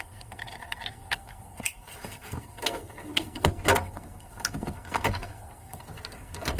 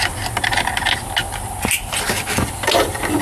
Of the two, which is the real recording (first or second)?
second